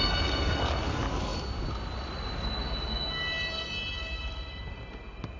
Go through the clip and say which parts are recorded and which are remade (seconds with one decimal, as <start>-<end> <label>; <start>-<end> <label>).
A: 0.0-5.4 recorded